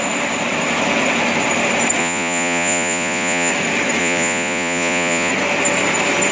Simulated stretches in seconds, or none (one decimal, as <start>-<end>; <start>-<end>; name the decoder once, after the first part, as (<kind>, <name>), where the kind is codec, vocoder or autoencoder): 2.0-3.5 (vocoder, Vocos); 4.0-5.3